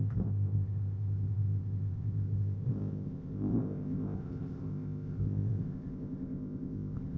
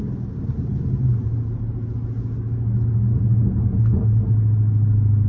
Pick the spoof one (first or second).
first